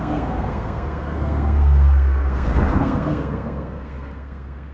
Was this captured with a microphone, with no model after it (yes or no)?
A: no